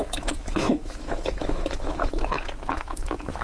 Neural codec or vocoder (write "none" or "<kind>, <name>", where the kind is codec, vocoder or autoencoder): autoencoder, DAC-VAE